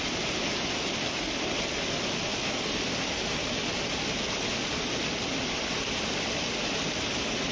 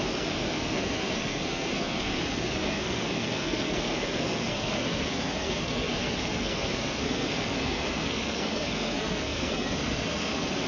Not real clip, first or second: second